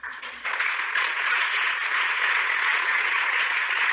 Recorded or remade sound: remade